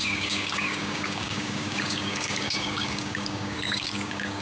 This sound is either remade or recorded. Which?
remade